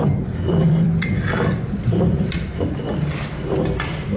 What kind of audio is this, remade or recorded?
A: remade